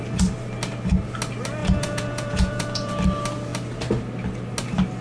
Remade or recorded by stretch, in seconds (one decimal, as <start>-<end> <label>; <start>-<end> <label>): 0.0-1.6 recorded; 1.6-2.9 remade; 2.9-5.0 recorded

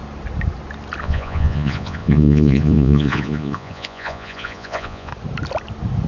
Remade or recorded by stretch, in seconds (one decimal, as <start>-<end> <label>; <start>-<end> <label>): 0.0-1.0 recorded; 1.0-5.1 remade; 5.1-6.1 recorded

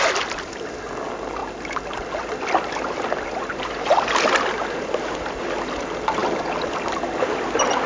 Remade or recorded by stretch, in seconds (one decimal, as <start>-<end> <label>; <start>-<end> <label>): 0.0-7.9 recorded

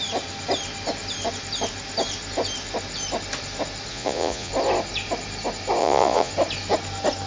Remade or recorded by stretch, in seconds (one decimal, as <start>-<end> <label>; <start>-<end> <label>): 0.0-3.9 recorded; 3.9-4.5 remade; 4.5-5.8 recorded; 5.8-6.3 remade; 6.3-7.3 recorded

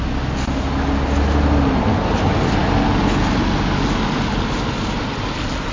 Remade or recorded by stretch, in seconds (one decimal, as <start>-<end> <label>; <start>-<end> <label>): 0.0-5.7 recorded

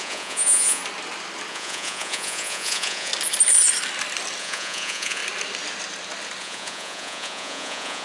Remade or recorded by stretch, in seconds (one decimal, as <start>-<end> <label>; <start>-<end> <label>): 0.0-0.8 remade; 0.8-1.5 recorded; 1.5-3.1 remade; 3.1-4.4 recorded; 4.4-5.2 remade; 5.2-6.4 recorded; 6.4-8.0 remade